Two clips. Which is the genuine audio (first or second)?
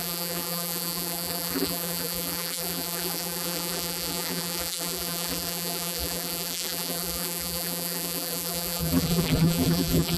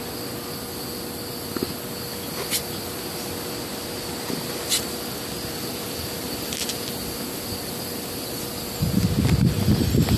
second